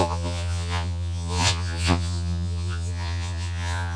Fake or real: fake